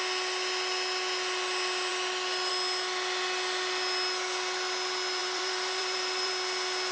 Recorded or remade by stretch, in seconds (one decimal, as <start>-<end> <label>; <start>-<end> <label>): 0.0-5.2 recorded; 5.2-6.3 remade; 6.3-6.9 recorded